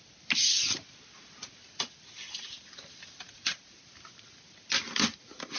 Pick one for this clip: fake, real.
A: real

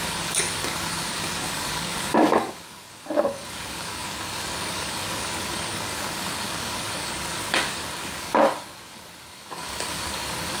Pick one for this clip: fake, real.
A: fake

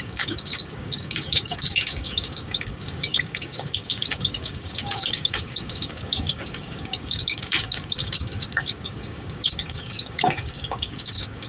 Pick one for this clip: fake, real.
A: fake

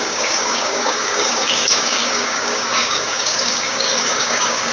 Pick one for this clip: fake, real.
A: fake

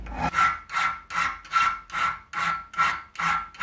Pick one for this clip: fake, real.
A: real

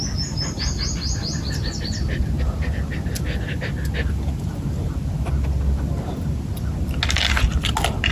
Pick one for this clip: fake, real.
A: real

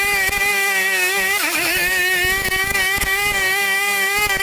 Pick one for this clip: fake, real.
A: fake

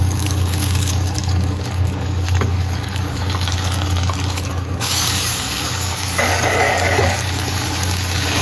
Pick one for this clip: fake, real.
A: fake